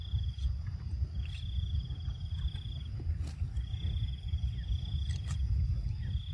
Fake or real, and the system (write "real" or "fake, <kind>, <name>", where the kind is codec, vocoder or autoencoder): real